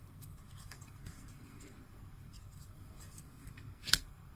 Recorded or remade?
remade